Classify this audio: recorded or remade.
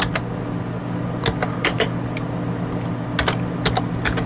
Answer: recorded